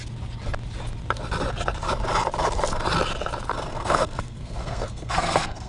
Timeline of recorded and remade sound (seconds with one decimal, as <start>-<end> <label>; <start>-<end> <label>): 0.0-3.7 recorded; 3.7-5.7 remade